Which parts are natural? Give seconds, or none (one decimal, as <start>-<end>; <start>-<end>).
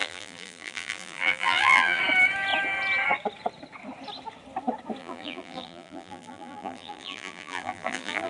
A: 2.0-5.0